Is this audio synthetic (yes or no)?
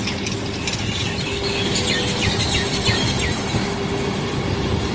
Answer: no